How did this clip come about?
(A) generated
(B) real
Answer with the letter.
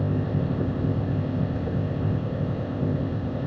A